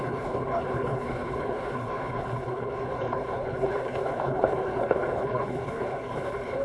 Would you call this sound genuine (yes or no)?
no